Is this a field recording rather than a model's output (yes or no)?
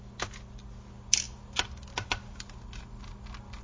yes